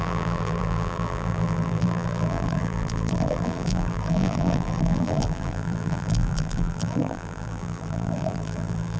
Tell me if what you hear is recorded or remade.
remade